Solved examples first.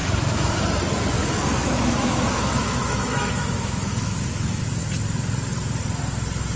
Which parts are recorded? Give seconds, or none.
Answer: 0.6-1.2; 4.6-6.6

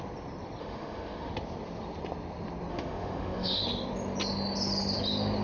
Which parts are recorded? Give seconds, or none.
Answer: 0.0-0.6; 1.3-2.7; 3.6-5.4

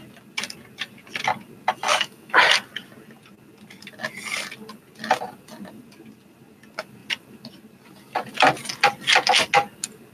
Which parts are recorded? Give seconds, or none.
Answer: 0.0-1.9; 2.4-10.1

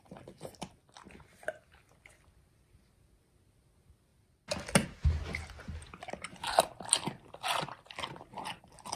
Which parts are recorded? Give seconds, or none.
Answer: 0.0-9.0

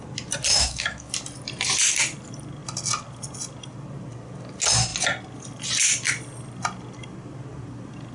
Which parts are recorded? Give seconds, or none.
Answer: 0.0-0.5; 1.1-8.1

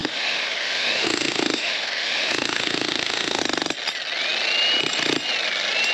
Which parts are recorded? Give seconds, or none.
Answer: 3.4-5.9